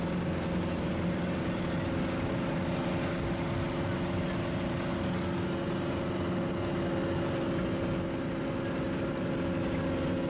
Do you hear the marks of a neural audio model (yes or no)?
no